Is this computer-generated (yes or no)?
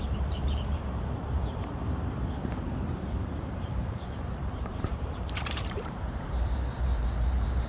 yes